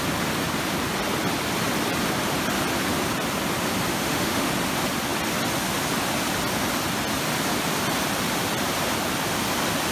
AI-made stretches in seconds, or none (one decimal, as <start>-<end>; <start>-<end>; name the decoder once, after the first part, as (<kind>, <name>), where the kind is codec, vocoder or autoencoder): 3.9-4.5 (autoencoder, DAC-VAE)